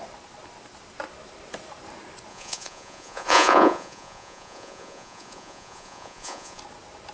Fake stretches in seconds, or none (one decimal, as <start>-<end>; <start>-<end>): 2.3-6.6

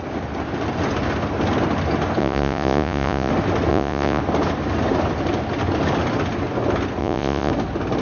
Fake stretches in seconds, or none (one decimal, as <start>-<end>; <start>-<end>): 2.2-3.3; 3.7-4.2; 7.0-7.5

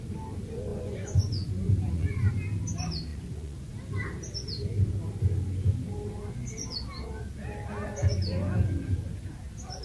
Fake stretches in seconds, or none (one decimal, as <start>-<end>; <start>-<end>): 0.7-2.3; 3.1-3.7

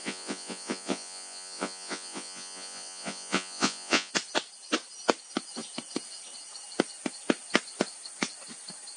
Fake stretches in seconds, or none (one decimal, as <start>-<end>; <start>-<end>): 0.0-4.1

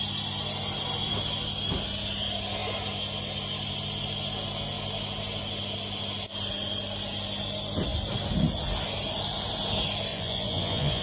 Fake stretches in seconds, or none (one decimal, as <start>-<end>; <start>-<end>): 10.1-11.0

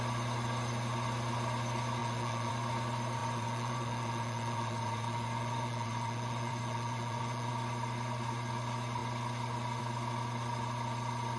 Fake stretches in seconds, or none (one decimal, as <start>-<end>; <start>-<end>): 2.0-2.5; 3.2-7.5

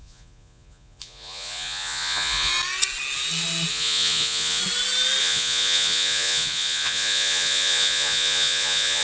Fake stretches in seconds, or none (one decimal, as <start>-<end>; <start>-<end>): 0.0-2.5; 3.7-4.6; 5.2-9.0

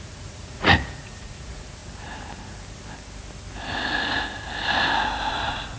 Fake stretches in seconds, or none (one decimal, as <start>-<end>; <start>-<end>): 0.0-1.8; 5.3-5.8